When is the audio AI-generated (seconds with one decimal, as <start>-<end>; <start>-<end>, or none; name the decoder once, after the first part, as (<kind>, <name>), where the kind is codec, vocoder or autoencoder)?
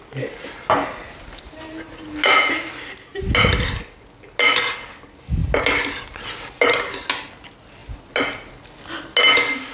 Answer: none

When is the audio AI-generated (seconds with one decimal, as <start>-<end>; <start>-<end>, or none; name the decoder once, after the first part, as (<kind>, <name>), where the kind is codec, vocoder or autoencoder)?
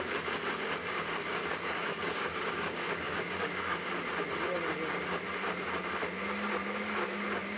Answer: 0.8-4.1 (codec, DAC)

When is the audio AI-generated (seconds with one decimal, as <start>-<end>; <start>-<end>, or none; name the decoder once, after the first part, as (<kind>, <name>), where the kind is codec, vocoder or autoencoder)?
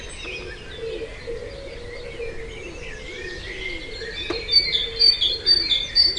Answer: none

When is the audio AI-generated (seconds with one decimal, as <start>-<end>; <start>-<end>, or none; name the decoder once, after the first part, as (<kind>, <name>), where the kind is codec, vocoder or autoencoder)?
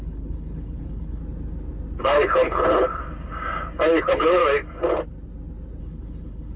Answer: 0.0-1.2 (codec, HILCodec); 2.0-3.0; 4.0-4.4; 5.8-6.6